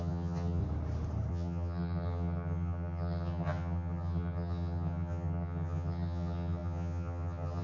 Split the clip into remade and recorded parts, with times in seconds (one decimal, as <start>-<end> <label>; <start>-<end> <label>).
0.0-0.6 remade; 0.6-1.3 recorded; 1.3-7.6 remade